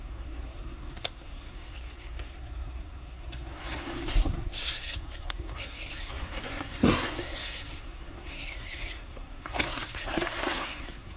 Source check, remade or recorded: remade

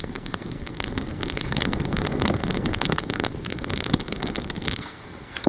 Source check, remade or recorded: remade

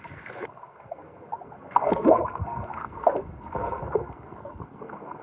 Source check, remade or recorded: remade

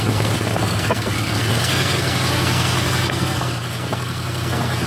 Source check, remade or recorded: remade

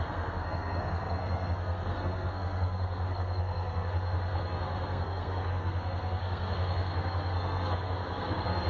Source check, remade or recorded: remade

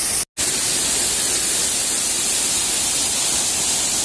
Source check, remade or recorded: recorded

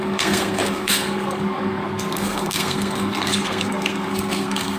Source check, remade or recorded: remade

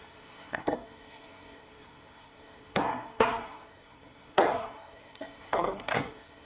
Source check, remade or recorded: remade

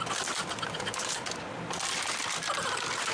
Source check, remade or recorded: recorded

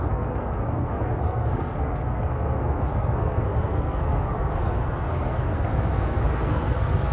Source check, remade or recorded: remade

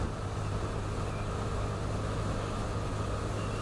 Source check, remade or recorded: recorded